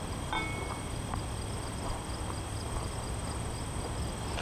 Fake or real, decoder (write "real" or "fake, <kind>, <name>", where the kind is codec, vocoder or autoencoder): real